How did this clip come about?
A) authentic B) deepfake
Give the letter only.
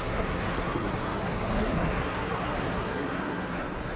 B